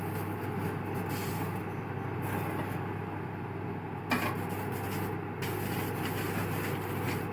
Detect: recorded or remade recorded